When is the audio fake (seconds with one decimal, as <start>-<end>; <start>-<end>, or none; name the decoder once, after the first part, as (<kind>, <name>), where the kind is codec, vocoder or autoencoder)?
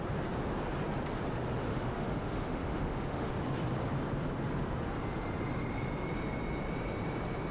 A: 1.7-3.3 (autoencoder, DAC-VAE)